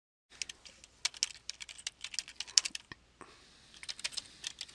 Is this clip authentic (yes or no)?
yes